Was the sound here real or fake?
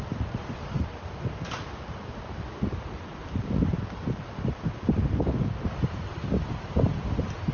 fake